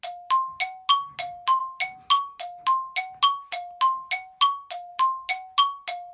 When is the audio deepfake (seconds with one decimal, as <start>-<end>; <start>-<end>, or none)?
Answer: none